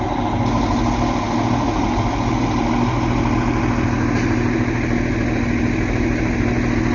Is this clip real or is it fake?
real